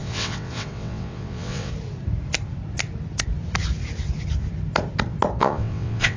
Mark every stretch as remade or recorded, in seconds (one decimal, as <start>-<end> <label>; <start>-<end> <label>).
0.0-1.7 remade; 1.7-5.4 recorded; 5.4-6.2 remade